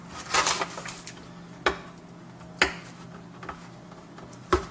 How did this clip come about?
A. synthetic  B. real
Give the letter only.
B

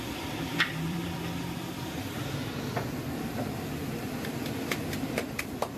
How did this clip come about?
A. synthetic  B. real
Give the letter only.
A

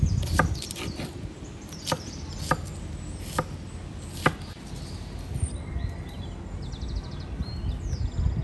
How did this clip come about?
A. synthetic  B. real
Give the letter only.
B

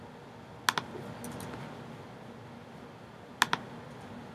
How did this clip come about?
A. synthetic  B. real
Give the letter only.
B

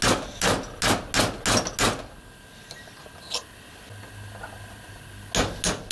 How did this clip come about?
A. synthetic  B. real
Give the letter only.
B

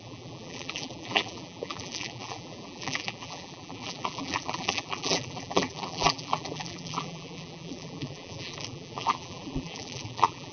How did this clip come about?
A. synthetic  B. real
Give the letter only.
A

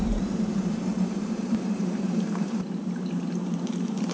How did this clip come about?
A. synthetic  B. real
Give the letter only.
A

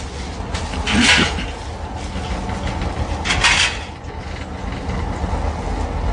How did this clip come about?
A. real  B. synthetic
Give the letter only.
A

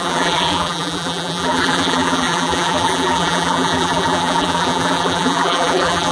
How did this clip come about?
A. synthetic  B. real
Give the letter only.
A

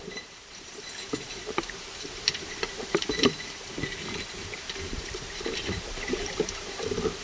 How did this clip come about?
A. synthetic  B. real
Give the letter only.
A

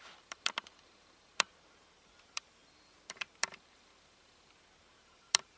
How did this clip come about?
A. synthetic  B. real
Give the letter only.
A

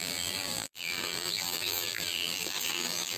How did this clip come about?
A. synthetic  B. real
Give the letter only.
A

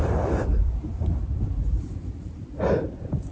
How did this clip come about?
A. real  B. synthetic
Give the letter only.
B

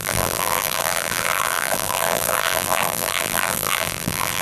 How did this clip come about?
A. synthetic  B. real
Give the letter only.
A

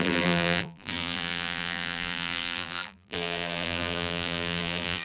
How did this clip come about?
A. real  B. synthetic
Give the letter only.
B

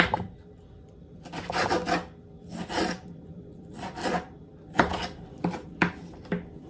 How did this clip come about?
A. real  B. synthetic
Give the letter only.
B